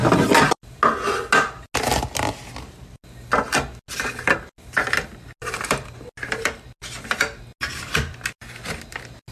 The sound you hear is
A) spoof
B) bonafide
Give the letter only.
B